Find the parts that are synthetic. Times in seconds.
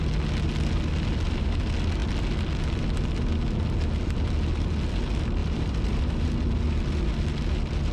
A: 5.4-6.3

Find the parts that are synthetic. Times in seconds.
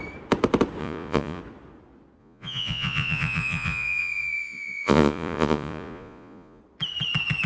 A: 0.8-1.4; 2.2-6.6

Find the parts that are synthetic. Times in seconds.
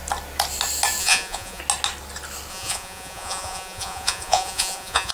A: 1.0-1.6; 2.5-5.1